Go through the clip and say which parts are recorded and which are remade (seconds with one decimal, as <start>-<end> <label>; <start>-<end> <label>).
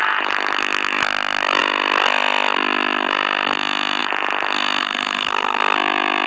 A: 0.0-4.8 recorded; 4.8-5.6 remade; 5.6-6.3 recorded